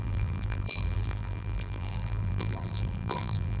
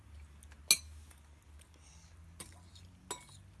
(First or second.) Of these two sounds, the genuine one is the second